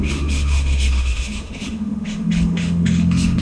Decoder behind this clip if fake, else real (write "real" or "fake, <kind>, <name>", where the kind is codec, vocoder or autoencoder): fake, autoencoder, DAC-VAE